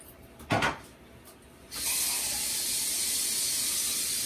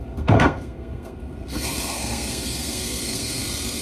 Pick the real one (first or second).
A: first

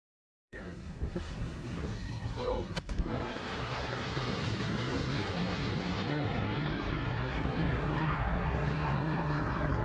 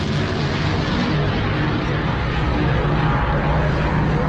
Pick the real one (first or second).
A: second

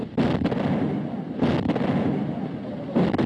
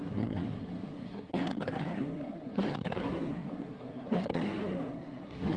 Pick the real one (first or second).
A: first